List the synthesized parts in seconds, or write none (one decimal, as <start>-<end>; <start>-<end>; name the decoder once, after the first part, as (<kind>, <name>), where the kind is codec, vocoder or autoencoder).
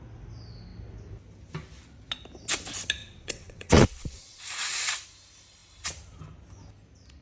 3.0-4.9 (vocoder, WaveNeXt)